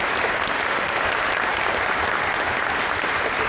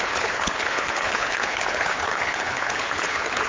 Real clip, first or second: first